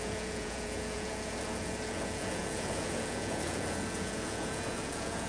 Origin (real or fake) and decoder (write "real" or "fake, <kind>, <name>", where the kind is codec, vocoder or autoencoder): fake, vocoder, Vocos